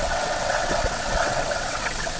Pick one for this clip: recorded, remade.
remade